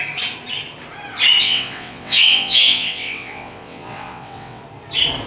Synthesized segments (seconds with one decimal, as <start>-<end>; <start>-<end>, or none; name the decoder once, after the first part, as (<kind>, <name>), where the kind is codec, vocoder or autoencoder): 1.4-4.6 (vocoder, WaveNeXt)